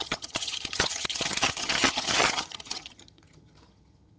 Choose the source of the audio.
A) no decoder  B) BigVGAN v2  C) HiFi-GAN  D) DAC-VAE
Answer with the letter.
C